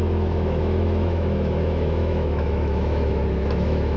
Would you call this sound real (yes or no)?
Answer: no